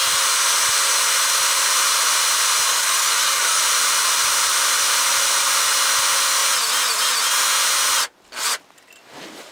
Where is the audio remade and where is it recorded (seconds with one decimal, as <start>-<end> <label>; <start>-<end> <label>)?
0.0-2.7 recorded; 2.7-3.6 remade; 3.6-9.5 recorded